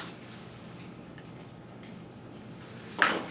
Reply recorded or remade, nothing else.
recorded